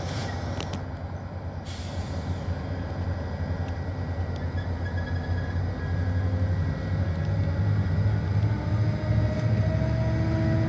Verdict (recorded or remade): recorded